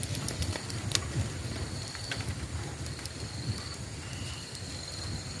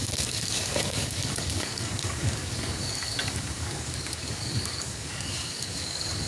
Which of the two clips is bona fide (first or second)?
first